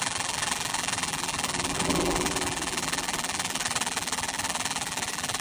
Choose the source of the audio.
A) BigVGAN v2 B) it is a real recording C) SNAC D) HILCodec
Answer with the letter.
A